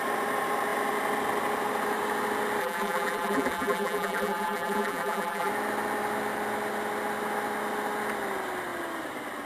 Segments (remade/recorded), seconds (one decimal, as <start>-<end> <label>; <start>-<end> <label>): 0.0-2.6 recorded; 2.6-5.5 remade; 5.5-9.5 recorded